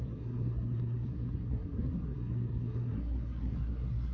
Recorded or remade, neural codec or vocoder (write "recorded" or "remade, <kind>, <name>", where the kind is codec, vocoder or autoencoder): remade, codec, SNAC